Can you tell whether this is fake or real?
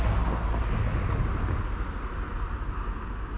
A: real